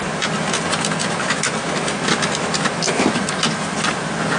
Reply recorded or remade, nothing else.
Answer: recorded